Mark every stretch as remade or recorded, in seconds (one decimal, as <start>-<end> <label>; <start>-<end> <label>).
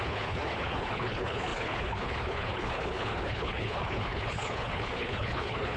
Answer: 0.0-5.8 remade